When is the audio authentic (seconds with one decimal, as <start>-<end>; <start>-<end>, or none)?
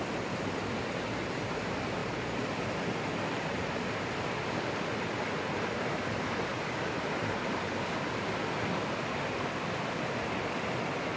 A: 0.0-11.2